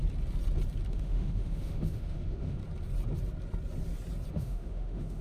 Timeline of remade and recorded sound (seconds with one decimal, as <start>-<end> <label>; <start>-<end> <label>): 0.0-0.9 recorded; 0.9-2.6 remade; 2.6-4.3 recorded; 4.3-5.2 remade